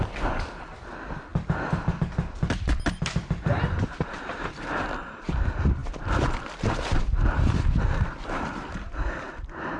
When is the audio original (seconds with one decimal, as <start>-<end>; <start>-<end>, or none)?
1.3-2.7